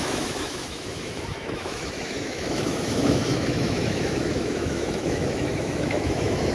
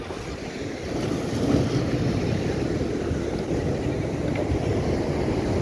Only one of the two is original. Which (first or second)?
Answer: second